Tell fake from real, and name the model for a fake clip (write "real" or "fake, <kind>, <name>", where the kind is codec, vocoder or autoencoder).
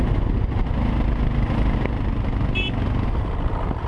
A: real